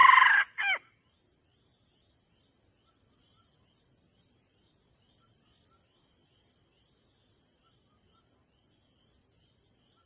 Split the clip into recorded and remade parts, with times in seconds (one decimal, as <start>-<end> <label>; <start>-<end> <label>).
0.0-10.1 recorded